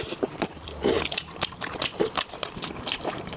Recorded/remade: remade